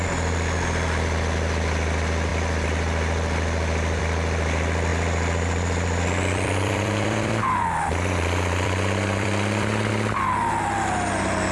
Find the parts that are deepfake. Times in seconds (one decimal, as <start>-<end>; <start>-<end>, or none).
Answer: 4.9-9.9